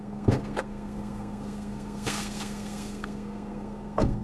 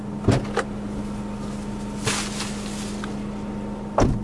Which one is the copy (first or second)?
first